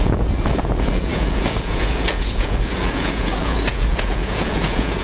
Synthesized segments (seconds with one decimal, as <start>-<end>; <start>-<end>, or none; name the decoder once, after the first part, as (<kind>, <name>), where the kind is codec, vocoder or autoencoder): 0.0-5.0 (vocoder, Vocos)